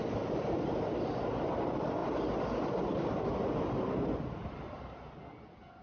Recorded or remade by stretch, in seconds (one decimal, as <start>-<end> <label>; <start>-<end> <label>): 0.0-5.8 recorded